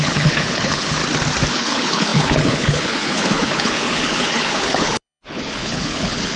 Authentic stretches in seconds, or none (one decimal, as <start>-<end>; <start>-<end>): 1.0-1.5

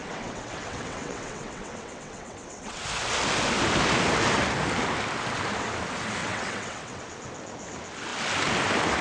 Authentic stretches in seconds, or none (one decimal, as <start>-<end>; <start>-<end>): 2.8-6.2; 7.0-9.0

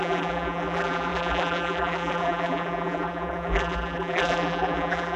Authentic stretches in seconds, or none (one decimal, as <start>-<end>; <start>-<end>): none

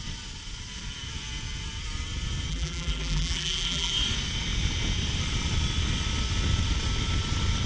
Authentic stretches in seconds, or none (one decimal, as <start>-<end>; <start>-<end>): 0.0-2.5; 3.9-7.7

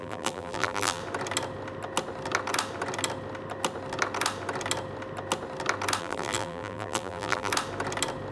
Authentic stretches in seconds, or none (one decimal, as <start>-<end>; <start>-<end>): 1.0-6.0; 7.5-8.3

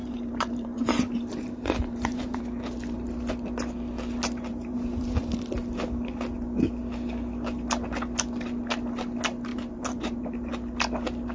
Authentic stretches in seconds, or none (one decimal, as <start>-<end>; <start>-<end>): 2.4-4.5; 5.3-9.5; 10.5-11.3